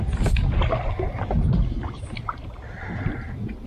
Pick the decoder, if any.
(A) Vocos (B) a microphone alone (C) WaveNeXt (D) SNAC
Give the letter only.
B